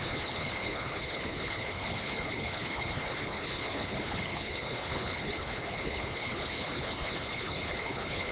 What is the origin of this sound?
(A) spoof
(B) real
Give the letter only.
A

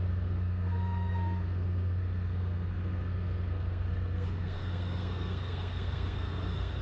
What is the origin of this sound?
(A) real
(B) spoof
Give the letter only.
B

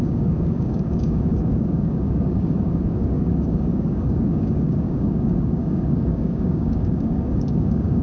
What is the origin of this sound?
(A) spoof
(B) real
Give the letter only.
A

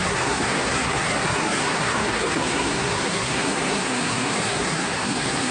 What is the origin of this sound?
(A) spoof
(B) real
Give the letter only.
A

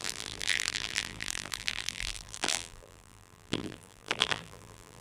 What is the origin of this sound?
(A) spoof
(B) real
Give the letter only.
A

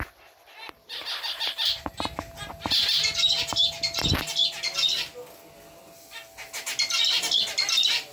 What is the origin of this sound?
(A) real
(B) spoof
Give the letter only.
A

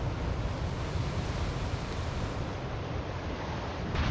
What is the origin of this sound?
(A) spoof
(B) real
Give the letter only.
B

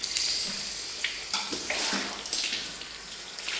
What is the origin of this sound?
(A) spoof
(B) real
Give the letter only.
B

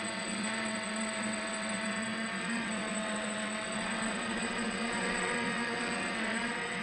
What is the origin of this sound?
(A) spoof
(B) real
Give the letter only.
A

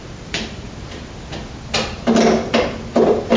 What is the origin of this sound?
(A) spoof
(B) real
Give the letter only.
B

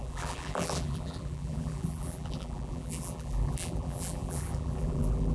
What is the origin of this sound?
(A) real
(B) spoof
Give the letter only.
B